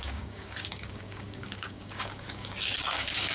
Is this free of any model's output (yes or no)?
no